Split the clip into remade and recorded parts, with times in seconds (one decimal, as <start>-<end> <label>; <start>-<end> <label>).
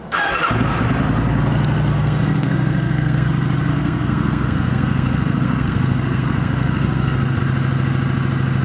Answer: 0.0-1.9 recorded; 1.9-3.3 remade; 3.3-3.7 recorded; 3.7-7.4 remade; 7.4-8.6 recorded